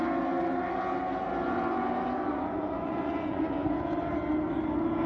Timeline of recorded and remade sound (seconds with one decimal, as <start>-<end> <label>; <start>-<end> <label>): 0.0-2.3 recorded; 2.3-3.4 remade; 3.4-5.1 recorded